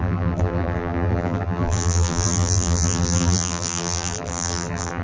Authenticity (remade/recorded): remade